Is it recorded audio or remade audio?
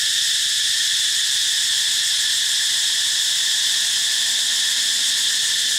recorded